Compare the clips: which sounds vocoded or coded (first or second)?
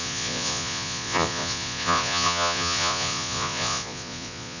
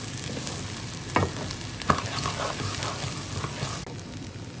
first